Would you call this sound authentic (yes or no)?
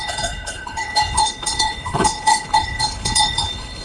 no